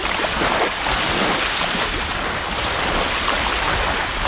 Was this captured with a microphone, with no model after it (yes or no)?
yes